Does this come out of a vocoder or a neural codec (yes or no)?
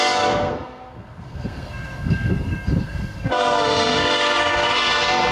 yes